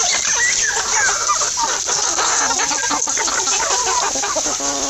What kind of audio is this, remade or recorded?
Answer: recorded